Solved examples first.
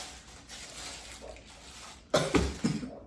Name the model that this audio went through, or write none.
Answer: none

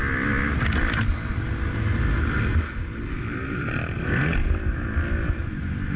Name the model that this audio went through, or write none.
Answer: none